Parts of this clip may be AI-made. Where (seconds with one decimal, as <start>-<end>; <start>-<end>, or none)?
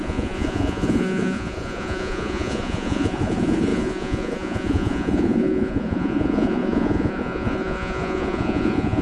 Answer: 0.0-9.0